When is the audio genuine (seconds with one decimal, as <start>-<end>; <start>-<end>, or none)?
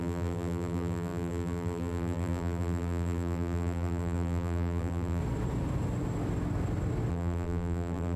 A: 5.2-7.1